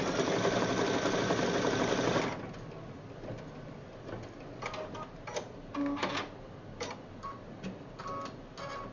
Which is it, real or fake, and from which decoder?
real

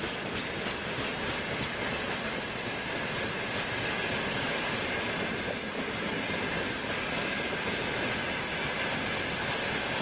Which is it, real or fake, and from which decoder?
real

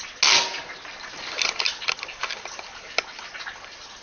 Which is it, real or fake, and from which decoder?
real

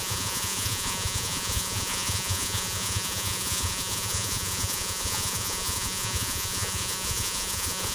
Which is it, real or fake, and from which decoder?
fake, vocoder, Vocos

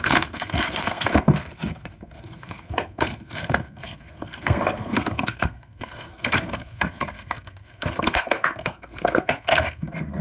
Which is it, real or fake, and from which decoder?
fake, codec, SNAC